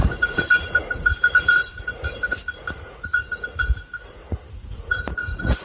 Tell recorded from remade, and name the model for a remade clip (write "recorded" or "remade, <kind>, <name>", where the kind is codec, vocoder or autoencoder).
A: remade, vocoder, Vocos